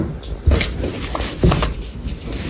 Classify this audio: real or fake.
real